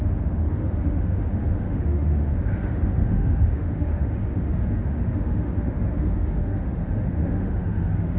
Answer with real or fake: fake